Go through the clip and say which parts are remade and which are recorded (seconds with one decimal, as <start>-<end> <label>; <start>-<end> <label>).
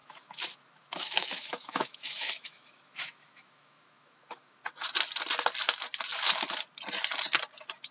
0.0-4.6 remade; 4.6-7.9 recorded